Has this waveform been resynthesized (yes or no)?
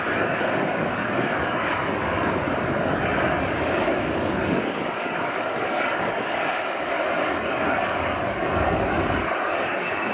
yes